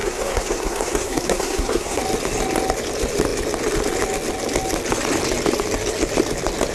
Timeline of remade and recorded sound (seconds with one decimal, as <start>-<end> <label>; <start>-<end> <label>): 0.0-2.0 remade; 2.0-6.7 recorded